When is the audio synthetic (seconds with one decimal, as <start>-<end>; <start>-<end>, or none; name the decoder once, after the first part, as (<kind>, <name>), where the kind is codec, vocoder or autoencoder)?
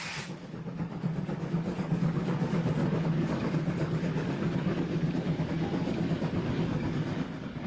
0.0-7.7 (codec, DAC)